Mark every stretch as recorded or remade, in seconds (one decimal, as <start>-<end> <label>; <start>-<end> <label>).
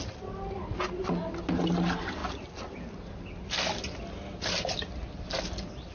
0.0-5.9 recorded